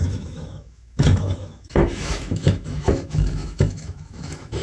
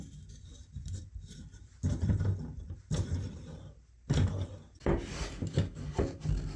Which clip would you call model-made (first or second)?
first